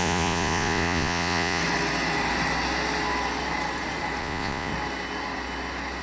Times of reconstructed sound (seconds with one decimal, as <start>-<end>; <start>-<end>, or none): 0.0-1.6; 4.2-4.7